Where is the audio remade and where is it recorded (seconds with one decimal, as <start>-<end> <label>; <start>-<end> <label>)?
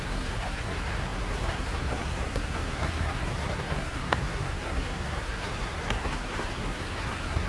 0.0-7.5 remade